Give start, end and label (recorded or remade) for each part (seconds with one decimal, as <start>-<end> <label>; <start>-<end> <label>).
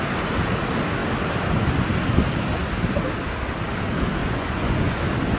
0.0-4.2 recorded; 4.2-5.0 remade; 5.0-5.4 recorded